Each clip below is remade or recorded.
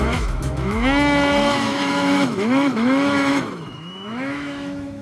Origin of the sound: remade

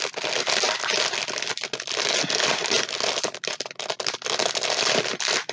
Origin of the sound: recorded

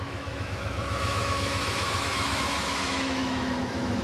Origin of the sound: remade